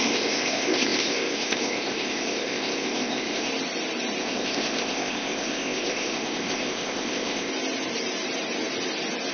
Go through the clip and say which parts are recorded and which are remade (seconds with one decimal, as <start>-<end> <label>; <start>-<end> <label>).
0.0-3.5 remade; 3.5-4.2 recorded; 4.2-7.5 remade; 7.5-9.3 recorded